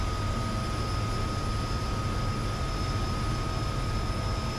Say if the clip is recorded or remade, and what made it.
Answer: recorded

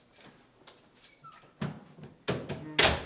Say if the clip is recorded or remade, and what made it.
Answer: recorded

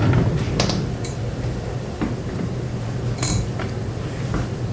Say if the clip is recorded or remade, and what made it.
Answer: remade, vocoder, BigVGAN v2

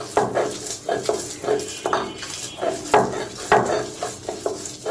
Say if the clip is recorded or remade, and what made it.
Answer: recorded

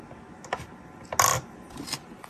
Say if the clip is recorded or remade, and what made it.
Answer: recorded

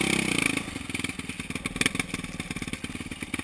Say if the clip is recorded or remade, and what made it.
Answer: recorded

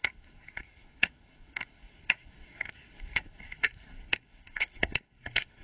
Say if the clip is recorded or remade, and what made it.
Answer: remade, codec, SNAC